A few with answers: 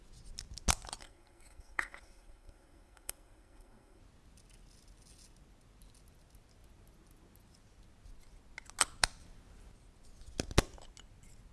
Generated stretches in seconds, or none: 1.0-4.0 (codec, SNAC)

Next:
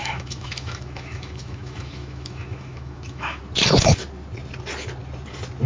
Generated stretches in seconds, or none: 0.0-3.4 (autoencoder, DAC-VAE)